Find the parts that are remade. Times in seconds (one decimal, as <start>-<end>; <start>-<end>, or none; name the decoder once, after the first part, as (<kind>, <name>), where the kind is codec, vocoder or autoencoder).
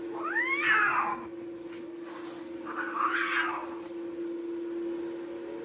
none